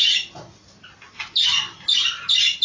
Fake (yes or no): no